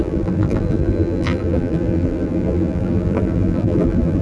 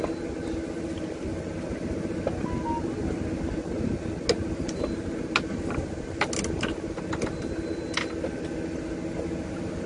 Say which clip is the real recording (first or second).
second